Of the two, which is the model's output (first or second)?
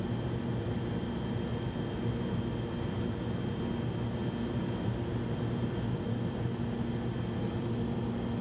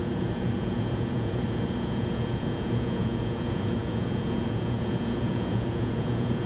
second